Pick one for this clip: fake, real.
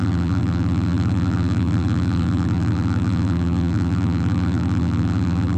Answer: fake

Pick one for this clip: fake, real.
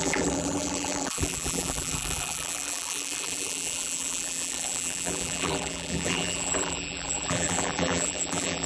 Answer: fake